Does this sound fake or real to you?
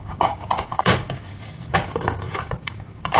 fake